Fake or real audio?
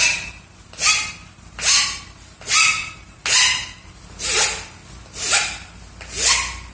real